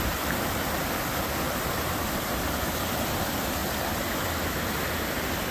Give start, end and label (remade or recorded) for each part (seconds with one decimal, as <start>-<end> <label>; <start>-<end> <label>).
0.0-5.5 recorded